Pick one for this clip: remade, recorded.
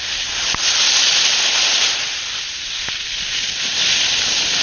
recorded